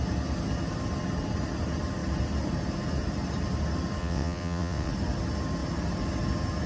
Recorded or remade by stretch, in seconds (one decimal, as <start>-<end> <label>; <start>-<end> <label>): 0.0-4.0 recorded; 4.0-4.9 remade; 4.9-6.7 recorded